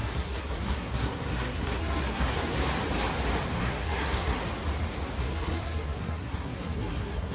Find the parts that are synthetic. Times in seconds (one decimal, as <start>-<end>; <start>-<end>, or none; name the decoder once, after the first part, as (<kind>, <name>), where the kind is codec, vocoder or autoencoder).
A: 0.0-2.6 (codec, SNAC); 3.6-4.4; 5.2-7.3